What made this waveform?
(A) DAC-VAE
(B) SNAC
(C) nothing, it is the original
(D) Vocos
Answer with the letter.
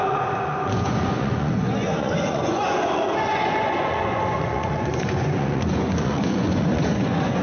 D